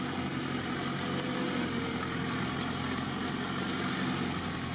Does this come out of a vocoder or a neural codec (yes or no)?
no